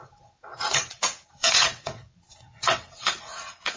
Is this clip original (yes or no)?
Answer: no